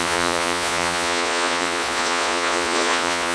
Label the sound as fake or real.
fake